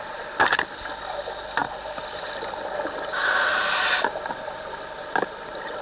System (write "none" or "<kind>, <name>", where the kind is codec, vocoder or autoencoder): vocoder, BigVGAN v2